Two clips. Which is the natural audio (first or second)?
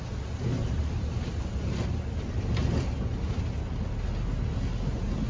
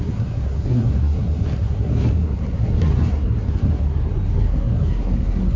first